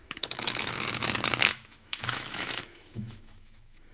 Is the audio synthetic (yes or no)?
yes